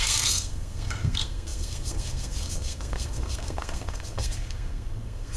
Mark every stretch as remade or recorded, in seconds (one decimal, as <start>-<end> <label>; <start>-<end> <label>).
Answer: 0.0-5.4 remade